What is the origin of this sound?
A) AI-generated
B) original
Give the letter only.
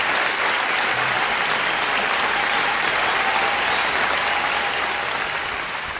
A